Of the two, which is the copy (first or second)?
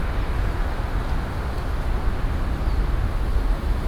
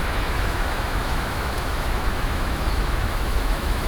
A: second